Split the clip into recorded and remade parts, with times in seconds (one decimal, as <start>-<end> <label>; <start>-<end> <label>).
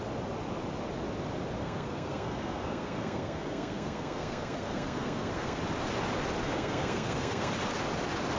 0.0-1.6 recorded; 1.6-5.6 remade; 5.6-6.4 recorded; 6.4-7.5 remade; 7.5-8.4 recorded